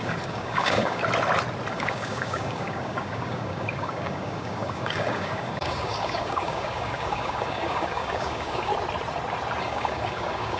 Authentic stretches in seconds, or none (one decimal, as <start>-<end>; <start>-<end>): 1.0-1.7; 8.7-9.6